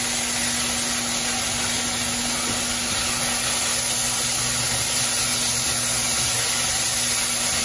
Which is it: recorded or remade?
recorded